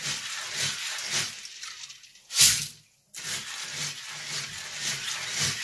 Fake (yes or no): no